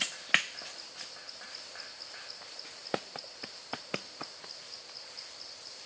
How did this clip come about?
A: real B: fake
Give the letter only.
A